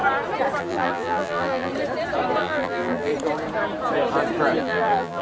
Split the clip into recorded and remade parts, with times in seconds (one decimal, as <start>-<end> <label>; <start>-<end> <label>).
0.0-0.6 recorded; 0.6-1.7 remade; 1.7-2.4 recorded; 2.4-3.1 remade; 3.1-4.6 recorded; 4.6-5.2 remade